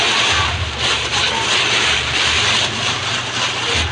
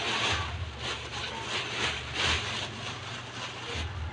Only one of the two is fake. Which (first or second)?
first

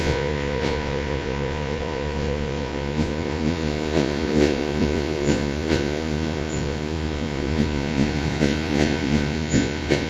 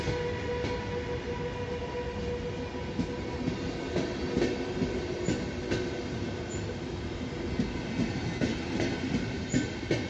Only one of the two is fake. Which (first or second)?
first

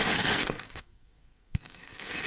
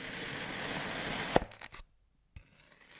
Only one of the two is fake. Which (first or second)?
first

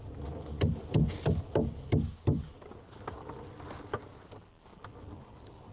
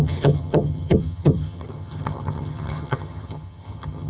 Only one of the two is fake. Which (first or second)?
second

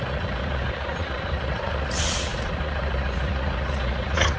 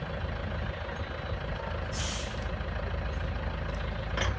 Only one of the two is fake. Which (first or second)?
first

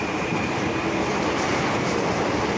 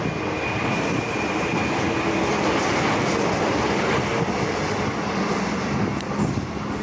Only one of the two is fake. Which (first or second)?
first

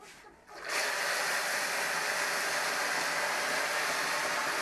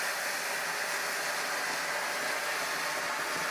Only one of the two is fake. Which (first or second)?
first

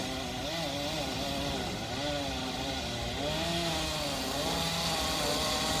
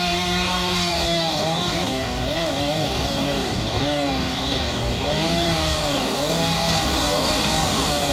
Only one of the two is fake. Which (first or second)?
second